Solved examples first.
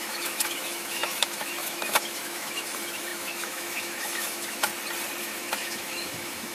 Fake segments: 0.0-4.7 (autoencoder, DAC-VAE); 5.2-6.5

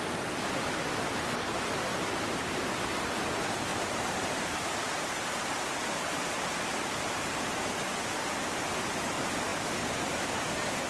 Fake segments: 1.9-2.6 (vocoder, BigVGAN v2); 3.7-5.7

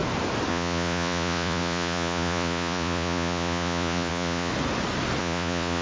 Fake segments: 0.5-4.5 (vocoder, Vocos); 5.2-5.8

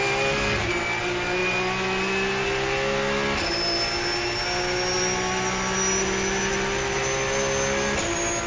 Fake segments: none

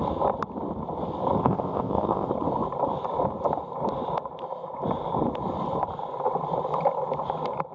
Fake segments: 1.4-2.3 (codec, ZipCodec)

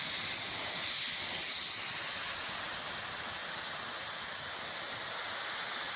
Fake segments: none

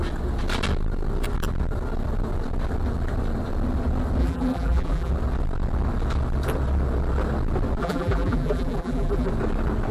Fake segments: 4.2-5.1 (vocoder, BigVGAN v2); 7.8-9.3

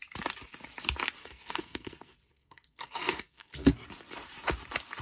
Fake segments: 1.2-3.7 (codec, SNAC)